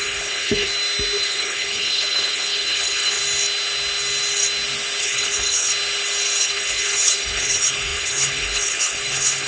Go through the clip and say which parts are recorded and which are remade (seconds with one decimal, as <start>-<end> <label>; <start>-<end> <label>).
0.0-0.7 remade; 0.7-1.2 recorded; 1.2-3.2 remade; 3.2-5.0 recorded; 5.0-5.7 remade; 5.7-6.4 recorded; 6.4-9.5 remade

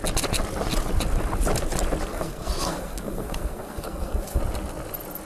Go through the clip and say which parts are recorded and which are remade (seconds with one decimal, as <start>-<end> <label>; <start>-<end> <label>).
0.0-2.1 recorded; 2.1-4.4 remade; 4.4-5.2 recorded

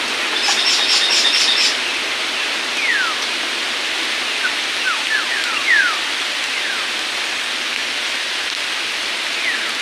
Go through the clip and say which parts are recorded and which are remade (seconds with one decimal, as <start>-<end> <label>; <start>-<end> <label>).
0.0-9.8 recorded

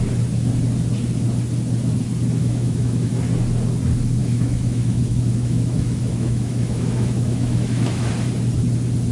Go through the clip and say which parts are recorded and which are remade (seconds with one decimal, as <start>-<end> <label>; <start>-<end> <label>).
0.0-2.4 recorded; 2.4-3.1 remade; 3.1-4.2 recorded; 4.2-8.1 remade; 8.1-9.1 recorded